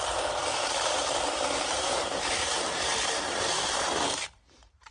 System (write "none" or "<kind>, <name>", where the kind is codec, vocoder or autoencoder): vocoder, BigVGAN v2